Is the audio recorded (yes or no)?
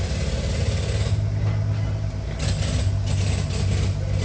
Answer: yes